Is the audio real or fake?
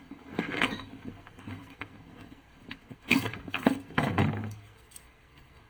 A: fake